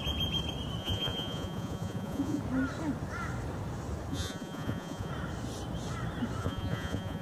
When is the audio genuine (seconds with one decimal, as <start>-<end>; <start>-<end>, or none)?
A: 0.0-0.8; 2.4-4.1; 5.1-6.4